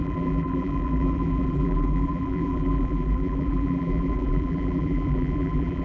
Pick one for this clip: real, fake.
fake